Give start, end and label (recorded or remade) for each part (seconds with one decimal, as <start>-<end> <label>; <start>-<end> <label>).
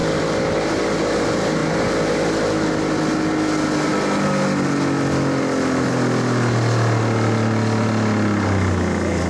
0.0-9.3 recorded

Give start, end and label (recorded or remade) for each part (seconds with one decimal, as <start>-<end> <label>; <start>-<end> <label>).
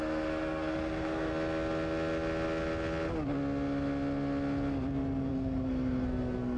0.0-1.3 remade; 1.3-5.3 recorded; 5.3-6.6 remade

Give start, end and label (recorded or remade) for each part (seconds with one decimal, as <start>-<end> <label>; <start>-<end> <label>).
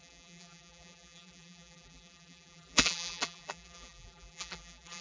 0.0-5.0 remade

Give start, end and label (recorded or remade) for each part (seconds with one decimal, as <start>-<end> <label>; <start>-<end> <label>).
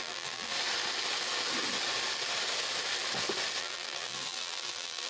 0.0-0.5 remade; 0.5-3.6 recorded; 3.6-5.1 remade